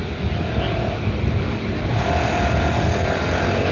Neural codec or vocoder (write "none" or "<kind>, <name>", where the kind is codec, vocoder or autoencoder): none